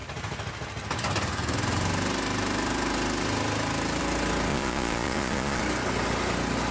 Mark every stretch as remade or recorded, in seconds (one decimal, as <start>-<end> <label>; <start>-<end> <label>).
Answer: 0.0-4.5 recorded; 4.5-5.6 remade; 5.6-6.7 recorded